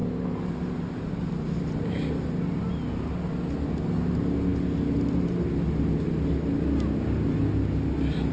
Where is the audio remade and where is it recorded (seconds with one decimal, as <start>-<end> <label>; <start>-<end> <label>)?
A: 0.0-8.3 recorded